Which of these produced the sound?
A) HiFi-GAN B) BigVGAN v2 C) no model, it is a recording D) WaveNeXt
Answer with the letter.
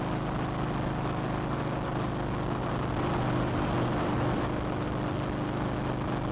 C